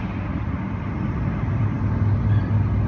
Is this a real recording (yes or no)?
yes